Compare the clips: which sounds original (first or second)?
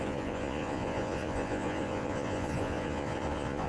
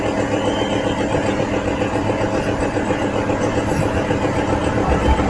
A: second